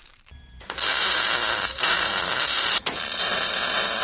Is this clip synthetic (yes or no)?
yes